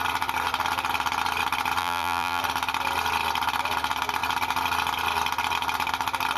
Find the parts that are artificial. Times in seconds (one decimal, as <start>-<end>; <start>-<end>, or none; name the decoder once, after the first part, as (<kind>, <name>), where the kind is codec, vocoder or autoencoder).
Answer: 1.8-2.4 (vocoder, BigVGAN v2)